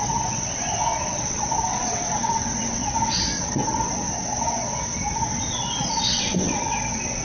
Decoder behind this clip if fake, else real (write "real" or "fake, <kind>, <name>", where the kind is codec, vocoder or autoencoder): fake, vocoder, WaveNeXt